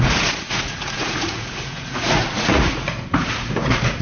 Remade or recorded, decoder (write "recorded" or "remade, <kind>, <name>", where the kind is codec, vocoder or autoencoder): remade, vocoder, Vocos